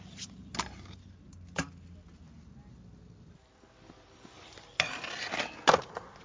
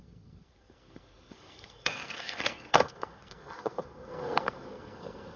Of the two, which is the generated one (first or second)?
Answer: second